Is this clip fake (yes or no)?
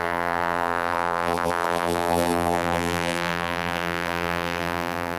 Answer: yes